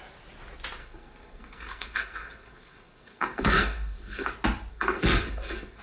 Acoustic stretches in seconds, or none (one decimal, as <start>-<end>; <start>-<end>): 0.0-0.8; 4.3-4.7